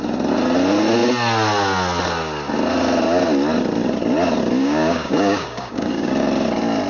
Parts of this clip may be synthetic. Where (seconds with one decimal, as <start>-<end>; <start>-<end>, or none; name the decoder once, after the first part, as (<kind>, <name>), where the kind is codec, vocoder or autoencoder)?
4.6-6.1 (codec, DAC)